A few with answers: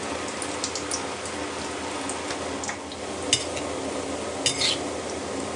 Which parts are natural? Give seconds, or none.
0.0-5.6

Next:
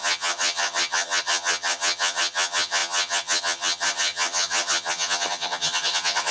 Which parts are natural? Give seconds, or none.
none

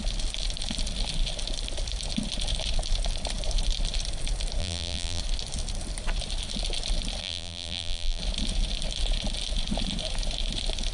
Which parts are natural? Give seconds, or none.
0.0-4.6; 5.2-7.2; 8.2-10.9

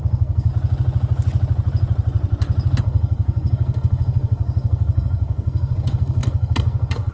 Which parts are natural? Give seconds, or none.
0.5-2.8

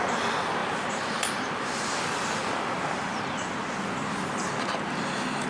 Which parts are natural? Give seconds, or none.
0.0-0.6; 1.9-2.4; 3.6-5.5

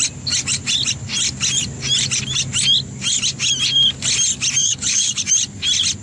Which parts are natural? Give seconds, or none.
0.0-4.6; 5.2-6.0

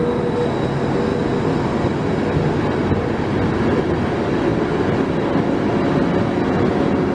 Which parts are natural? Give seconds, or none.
0.0-1.1; 2.1-2.8; 3.5-7.1

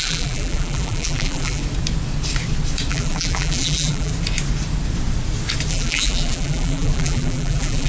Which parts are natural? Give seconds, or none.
1.6-2.9; 4.1-5.7